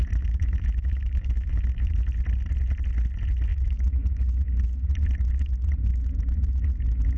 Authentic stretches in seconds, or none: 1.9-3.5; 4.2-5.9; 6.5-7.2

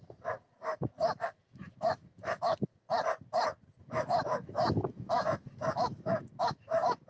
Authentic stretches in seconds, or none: 2.7-3.8

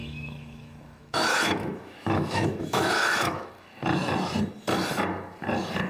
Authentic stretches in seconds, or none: 3.5-5.9

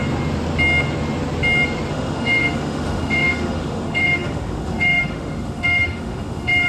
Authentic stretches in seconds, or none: 0.0-1.9

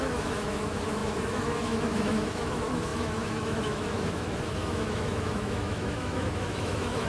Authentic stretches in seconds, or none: none

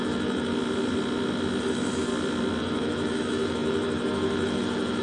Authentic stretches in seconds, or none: 0.5-1.6; 2.1-2.6

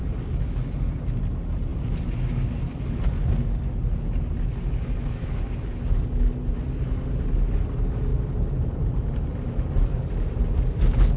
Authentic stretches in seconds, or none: 0.0-11.2

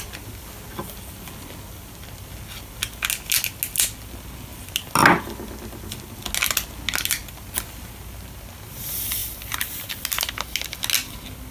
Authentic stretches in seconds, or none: 0.0-11.5